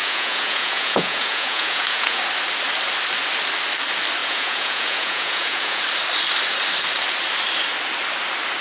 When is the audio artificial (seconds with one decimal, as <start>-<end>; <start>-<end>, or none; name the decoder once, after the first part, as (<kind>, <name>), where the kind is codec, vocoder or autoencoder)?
0.0-2.2 (vocoder, Vocos); 4.2-5.8